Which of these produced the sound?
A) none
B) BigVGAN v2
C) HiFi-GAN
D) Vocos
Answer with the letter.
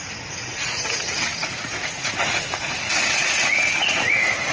D